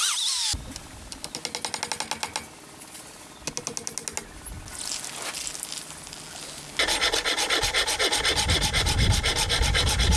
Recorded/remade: recorded